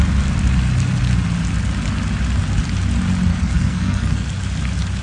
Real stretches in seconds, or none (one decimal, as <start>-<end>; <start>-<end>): 0.0-3.3; 4.3-5.0